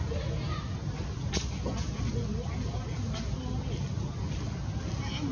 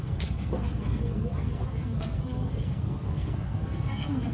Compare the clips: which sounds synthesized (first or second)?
second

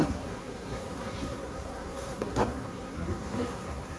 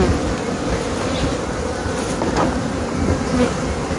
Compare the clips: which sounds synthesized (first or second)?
first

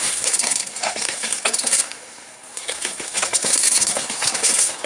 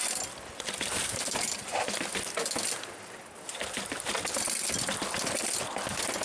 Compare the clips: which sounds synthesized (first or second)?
first